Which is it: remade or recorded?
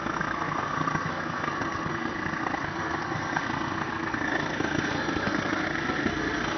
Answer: remade